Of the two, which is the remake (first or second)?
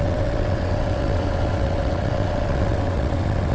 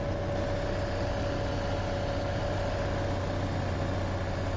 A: first